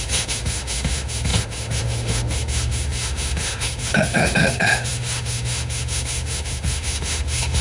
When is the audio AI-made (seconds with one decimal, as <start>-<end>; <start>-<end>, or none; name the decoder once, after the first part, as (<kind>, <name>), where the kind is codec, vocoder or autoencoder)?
0.0-7.6 (autoencoder, DAC-VAE)